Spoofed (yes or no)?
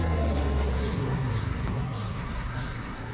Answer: yes